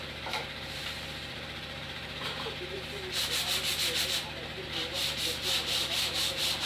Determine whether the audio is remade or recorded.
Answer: remade